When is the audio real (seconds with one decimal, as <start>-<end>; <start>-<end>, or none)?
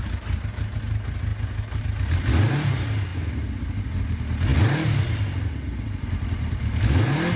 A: 0.0-7.4